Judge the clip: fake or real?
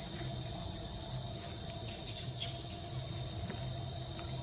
real